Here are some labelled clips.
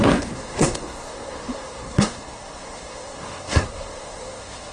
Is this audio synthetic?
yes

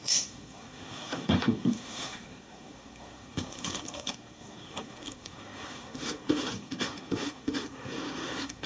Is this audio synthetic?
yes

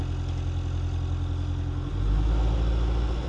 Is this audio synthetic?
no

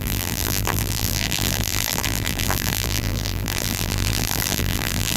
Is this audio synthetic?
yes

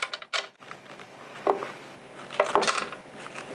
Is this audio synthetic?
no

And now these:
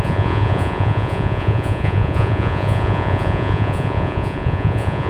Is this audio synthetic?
yes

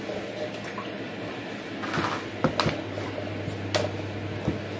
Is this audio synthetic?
no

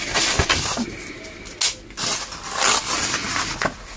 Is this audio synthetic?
no